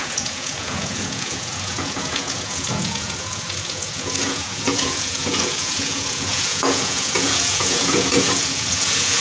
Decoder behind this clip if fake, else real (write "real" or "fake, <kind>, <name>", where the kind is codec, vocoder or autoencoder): fake, vocoder, Vocos